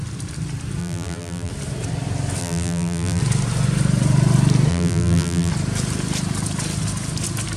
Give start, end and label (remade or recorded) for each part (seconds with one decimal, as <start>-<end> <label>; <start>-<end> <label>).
0.0-0.8 recorded; 0.8-1.5 remade; 1.5-2.4 recorded; 2.4-3.2 remade; 3.2-4.7 recorded; 4.7-5.5 remade; 5.5-7.6 recorded